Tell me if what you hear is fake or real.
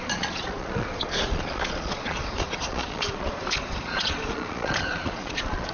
fake